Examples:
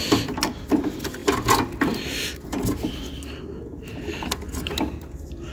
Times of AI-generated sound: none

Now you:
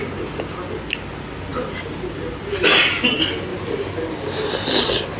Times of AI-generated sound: none

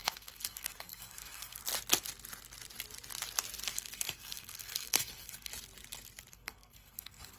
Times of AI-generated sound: 0.0-1.6; 3.6-5.5; 6.3-7.4

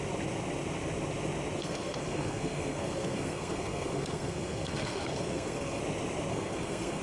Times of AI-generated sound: 1.6-5.8; 6.3-7.0